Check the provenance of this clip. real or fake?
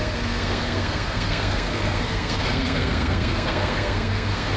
fake